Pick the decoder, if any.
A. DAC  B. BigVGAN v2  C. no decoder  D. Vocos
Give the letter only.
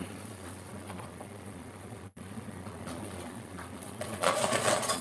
D